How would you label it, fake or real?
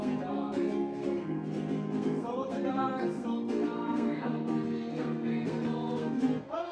fake